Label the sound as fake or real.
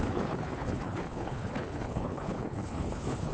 fake